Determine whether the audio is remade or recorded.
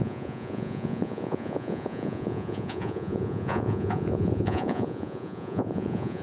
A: remade